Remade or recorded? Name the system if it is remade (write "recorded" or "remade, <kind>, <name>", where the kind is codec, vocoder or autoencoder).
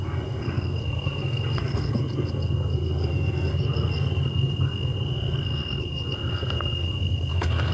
remade, codec, SNAC